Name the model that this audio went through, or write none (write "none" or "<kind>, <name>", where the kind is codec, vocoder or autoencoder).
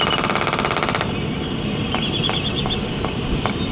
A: none